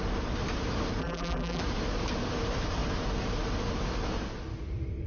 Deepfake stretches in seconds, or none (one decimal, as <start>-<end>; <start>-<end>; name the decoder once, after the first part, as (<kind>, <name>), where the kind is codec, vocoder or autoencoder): 1.0-1.6 (vocoder, BigVGAN v2)

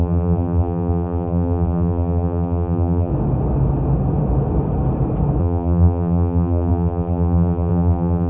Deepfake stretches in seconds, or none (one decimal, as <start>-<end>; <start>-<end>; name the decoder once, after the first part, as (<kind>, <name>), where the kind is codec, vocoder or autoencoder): 0.0-3.1 (vocoder, BigVGAN v2); 5.4-8.3

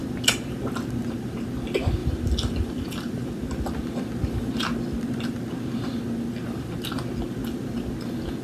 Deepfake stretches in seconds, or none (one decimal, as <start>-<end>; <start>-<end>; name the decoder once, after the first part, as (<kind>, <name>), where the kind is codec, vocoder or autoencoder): 2.0-3.3 (vocoder, BigVGAN v2)

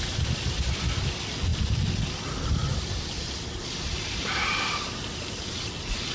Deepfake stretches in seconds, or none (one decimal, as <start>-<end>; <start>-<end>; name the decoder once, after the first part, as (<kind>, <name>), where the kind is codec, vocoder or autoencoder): none